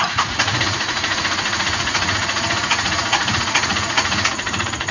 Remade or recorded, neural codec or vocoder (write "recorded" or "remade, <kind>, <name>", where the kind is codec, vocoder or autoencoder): remade, vocoder, Vocos